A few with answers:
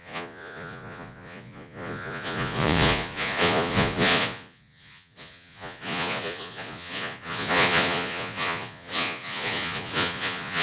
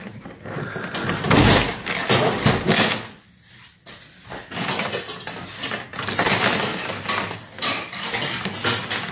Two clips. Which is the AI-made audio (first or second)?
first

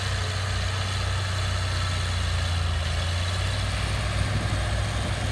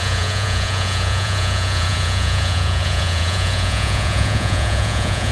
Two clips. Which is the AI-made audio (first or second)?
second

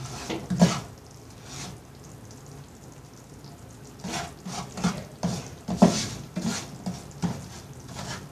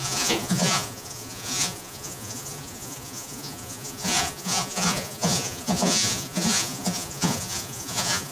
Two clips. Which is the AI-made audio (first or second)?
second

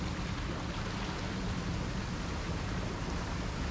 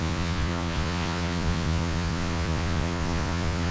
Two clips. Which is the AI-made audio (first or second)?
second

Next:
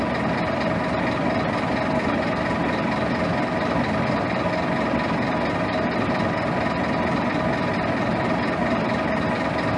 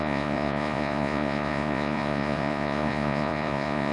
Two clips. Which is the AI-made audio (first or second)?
second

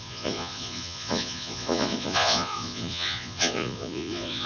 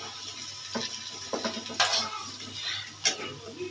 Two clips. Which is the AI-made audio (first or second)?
first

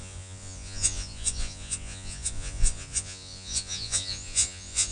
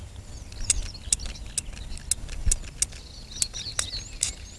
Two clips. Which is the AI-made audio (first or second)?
first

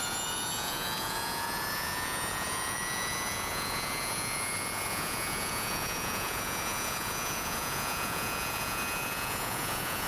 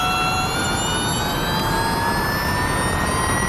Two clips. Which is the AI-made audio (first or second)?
first